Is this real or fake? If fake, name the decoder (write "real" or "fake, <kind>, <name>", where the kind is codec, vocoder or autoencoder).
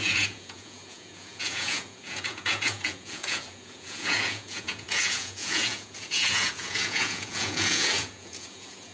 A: fake, vocoder, Vocos